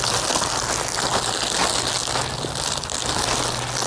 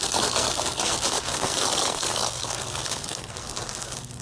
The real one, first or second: first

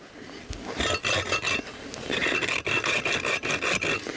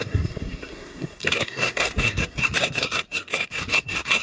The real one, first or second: first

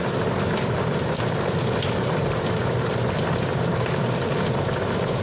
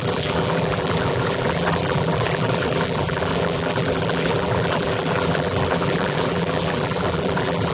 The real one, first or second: first